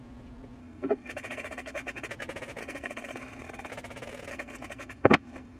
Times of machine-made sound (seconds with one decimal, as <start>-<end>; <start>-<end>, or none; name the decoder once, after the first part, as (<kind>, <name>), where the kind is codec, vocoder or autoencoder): 0.6-2.1 (codec, SNAC); 2.6-3.7; 4.3-5.6